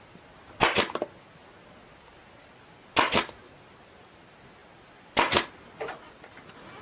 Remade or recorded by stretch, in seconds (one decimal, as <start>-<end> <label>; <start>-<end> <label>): 0.0-6.8 recorded